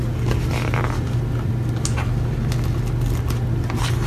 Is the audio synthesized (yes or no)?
no